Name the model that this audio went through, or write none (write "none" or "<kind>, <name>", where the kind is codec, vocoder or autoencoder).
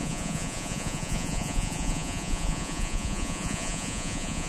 vocoder, Vocos